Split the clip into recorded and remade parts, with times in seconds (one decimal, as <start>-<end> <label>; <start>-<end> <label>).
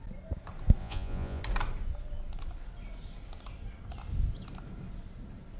0.0-0.8 recorded; 0.8-1.4 remade; 1.4-5.6 recorded